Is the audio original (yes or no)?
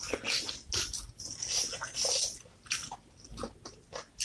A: yes